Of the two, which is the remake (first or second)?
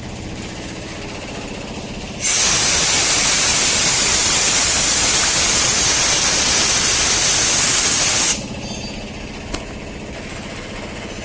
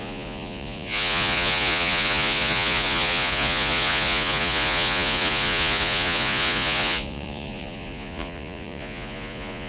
second